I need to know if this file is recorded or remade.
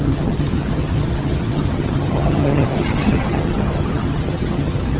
remade